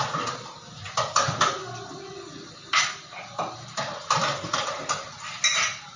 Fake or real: real